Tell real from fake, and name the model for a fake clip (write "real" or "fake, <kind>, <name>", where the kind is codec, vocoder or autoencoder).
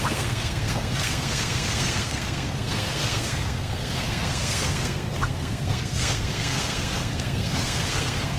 fake, codec, SNAC